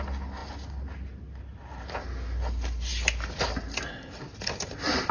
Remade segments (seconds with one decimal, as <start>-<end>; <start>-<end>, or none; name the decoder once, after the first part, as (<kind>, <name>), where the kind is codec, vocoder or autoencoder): none